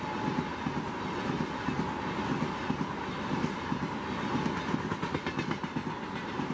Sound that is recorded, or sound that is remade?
recorded